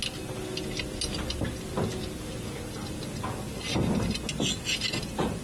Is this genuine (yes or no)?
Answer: yes